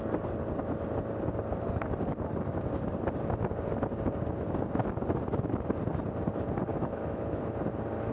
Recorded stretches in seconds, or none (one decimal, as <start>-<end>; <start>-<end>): 0.0-6.7; 7.5-8.1